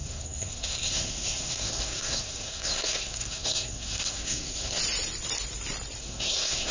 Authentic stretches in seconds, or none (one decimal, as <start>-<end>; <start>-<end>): 4.8-6.0